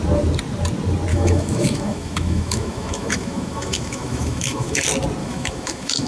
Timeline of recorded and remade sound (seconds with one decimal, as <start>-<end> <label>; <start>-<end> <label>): 0.0-1.1 recorded; 1.1-4.8 remade; 4.8-5.2 recorded; 5.2-6.1 remade